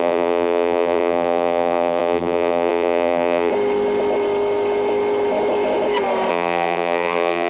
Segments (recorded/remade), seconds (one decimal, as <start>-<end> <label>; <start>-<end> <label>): 0.0-3.5 remade; 3.5-6.3 recorded; 6.3-7.5 remade